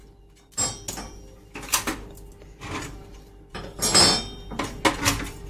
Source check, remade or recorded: recorded